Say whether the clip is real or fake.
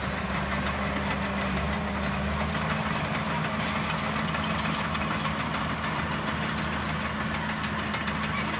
real